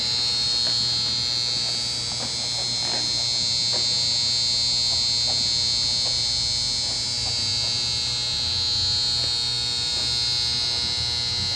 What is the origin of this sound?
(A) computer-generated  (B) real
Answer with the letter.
B